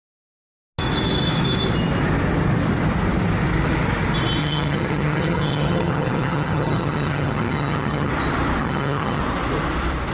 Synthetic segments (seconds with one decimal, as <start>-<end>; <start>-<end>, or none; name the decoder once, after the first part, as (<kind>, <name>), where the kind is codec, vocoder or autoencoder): 4.4-8.1 (vocoder, HiFi-GAN); 8.6-9.2